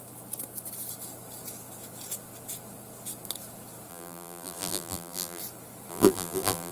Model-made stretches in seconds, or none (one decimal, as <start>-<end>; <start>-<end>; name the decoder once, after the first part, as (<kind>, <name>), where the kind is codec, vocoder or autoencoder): 3.9-5.4 (vocoder, BigVGAN v2); 5.9-6.7